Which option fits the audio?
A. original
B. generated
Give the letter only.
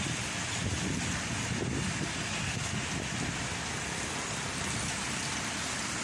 A